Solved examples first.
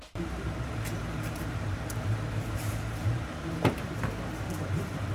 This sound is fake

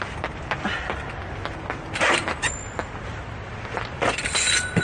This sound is real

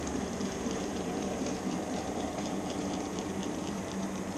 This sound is fake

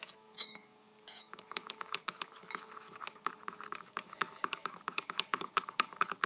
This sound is fake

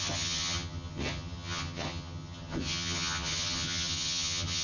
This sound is fake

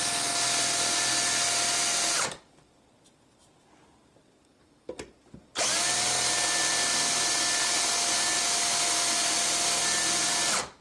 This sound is real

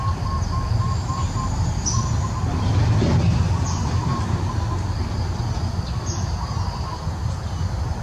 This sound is real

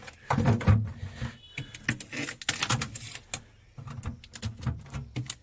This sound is real